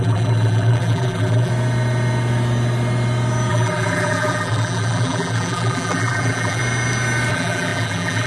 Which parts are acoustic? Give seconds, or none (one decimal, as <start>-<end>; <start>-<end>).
1.5-3.5; 6.6-7.3